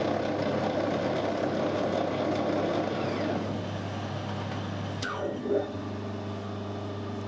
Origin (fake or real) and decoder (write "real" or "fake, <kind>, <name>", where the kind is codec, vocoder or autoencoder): real